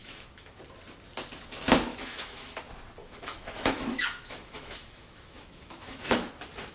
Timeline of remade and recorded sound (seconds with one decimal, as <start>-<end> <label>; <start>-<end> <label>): 0.0-0.6 remade; 0.6-1.9 recorded; 1.9-2.6 remade; 2.6-3.0 recorded; 3.0-6.3 remade; 6.3-6.7 recorded